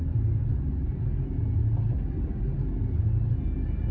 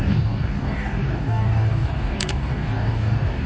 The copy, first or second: second